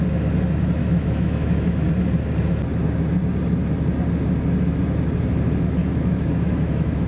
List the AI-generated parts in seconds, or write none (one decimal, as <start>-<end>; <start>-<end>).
0.8-1.9; 5.8-7.1